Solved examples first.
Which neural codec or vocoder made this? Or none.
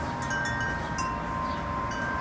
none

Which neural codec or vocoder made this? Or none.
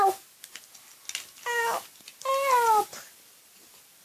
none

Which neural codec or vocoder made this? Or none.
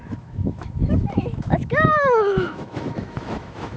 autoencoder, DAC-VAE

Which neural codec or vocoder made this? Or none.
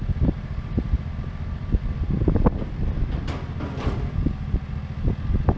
none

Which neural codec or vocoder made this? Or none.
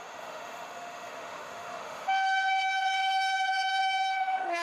autoencoder, DAC-VAE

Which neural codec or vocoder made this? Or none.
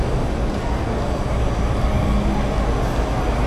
none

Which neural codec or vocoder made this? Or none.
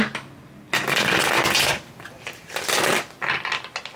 none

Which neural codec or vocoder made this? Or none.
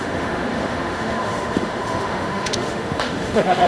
autoencoder, DAC-VAE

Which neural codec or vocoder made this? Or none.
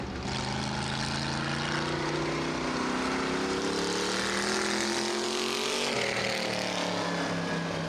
none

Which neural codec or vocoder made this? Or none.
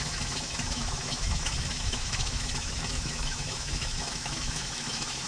autoencoder, DAC-VAE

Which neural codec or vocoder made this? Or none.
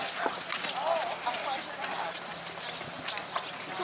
none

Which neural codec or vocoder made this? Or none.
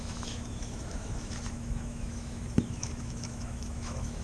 autoencoder, DAC-VAE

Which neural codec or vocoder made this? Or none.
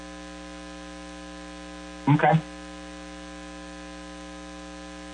none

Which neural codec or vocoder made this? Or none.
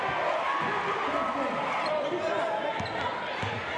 none